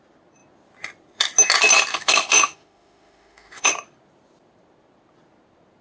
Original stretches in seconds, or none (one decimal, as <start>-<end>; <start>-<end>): 0.0-1.9; 3.7-5.8